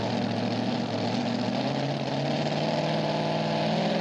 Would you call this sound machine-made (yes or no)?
no